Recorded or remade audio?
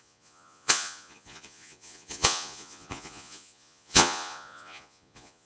remade